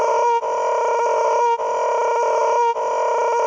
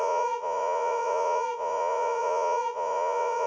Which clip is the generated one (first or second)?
second